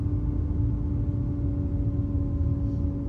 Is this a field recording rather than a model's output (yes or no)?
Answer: yes